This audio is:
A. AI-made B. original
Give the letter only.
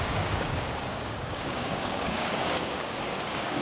A